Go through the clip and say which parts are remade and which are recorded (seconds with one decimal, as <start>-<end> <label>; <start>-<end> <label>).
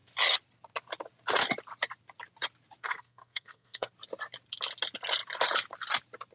0.0-2.8 recorded; 2.8-3.9 remade; 3.9-6.3 recorded